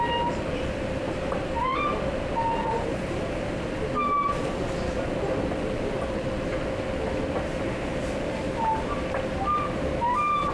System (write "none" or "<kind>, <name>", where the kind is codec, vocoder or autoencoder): none